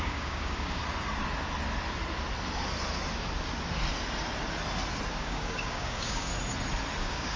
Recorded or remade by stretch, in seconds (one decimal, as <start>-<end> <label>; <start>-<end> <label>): 0.0-0.8 remade; 0.8-5.2 recorded; 5.2-6.3 remade; 6.3-7.0 recorded; 7.0-7.4 remade